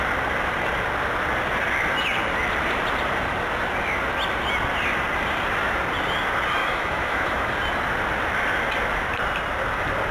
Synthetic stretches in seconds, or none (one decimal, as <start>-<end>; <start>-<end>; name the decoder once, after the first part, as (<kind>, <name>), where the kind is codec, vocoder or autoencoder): 6.6-7.5 (autoencoder, DAC-VAE)